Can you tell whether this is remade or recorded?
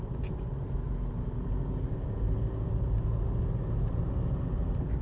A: recorded